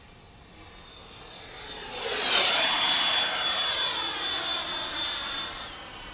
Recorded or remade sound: recorded